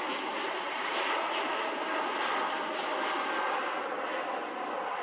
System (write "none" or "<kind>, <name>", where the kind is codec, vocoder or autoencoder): none